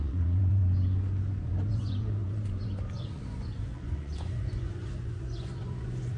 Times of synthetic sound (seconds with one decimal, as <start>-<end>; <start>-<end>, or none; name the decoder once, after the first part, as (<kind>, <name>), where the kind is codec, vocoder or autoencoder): 0.0-0.6 (vocoder, Vocos); 1.4-6.2